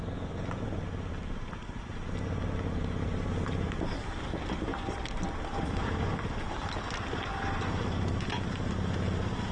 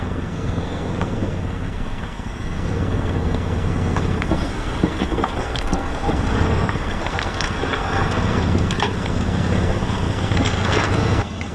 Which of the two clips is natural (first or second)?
first